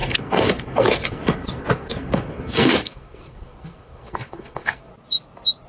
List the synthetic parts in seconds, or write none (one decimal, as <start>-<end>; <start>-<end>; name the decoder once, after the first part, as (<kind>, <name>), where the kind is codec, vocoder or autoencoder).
0.0-4.9 (codec, SNAC)